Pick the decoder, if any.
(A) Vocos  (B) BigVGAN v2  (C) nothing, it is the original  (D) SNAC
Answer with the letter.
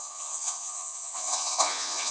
A